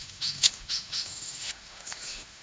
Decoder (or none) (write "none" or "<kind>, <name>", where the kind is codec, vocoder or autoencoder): autoencoder, DAC-VAE